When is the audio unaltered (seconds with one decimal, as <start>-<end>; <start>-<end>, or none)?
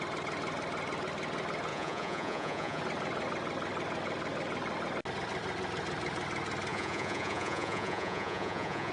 0.0-1.7; 2.8-6.7